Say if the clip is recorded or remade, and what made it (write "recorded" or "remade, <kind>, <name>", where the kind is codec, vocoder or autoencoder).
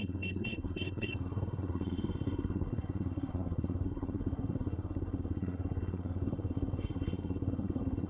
remade, codec, SNAC